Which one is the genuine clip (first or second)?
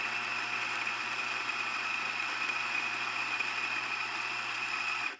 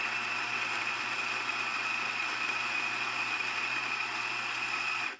second